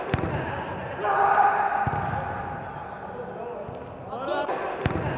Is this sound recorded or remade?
recorded